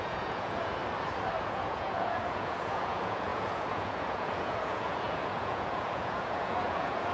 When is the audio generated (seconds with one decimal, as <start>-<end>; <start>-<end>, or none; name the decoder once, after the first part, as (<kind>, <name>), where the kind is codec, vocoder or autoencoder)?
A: 0.0-0.8 (vocoder, Vocos); 1.4-7.1